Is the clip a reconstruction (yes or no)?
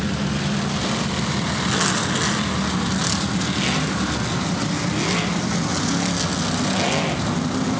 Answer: no